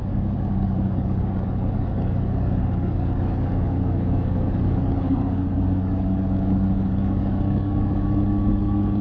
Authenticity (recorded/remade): remade